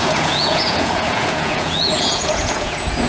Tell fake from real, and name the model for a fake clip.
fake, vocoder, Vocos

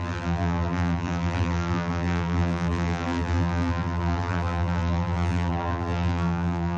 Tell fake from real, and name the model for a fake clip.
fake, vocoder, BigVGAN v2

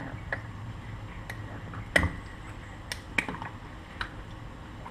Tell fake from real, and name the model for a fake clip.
real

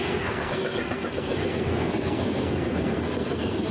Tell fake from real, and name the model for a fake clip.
fake, codec, SNAC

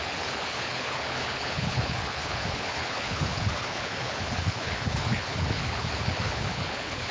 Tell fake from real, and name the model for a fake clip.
fake, codec, HILCodec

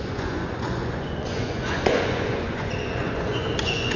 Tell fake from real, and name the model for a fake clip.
fake, vocoder, Vocos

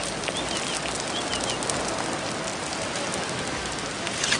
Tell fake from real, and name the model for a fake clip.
real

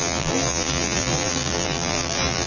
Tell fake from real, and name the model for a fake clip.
fake, vocoder, BigVGAN v2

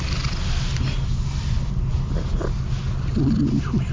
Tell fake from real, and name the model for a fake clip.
real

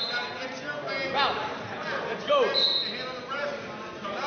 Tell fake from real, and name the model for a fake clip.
real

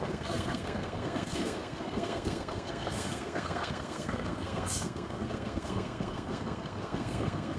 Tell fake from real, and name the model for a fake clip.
fake, codec, SNAC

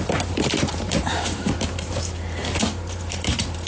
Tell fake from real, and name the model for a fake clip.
fake, vocoder, BigVGAN v2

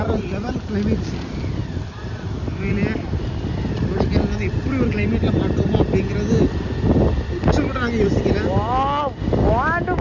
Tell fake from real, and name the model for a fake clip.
real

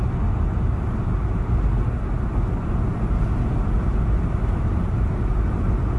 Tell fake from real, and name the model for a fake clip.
real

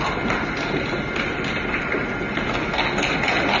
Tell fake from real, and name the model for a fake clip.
real